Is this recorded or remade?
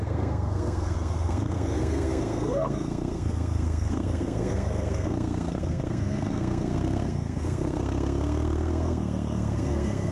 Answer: remade